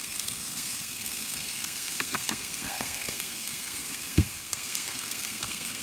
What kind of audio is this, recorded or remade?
remade